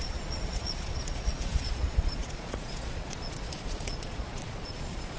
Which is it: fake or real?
fake